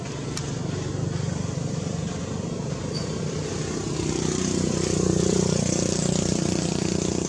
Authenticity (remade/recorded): remade